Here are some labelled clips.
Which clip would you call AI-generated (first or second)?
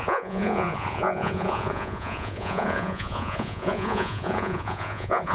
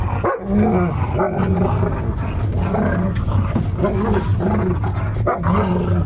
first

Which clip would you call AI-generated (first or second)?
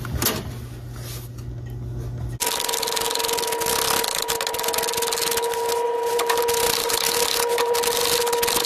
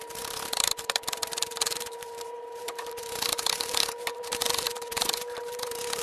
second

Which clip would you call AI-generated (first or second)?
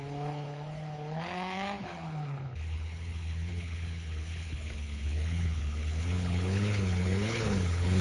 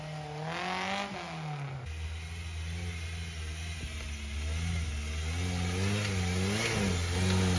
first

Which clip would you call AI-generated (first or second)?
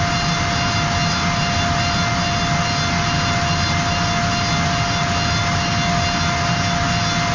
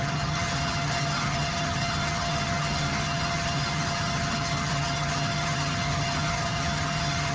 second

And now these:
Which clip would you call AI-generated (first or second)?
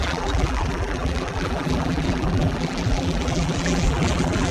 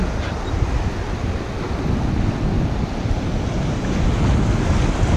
first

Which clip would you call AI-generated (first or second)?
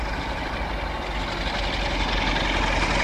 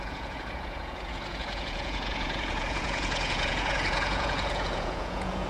second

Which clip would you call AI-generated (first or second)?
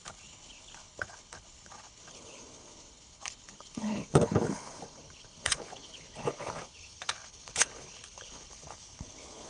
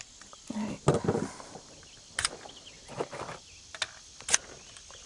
first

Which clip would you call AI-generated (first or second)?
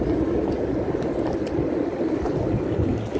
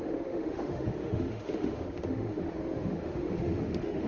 second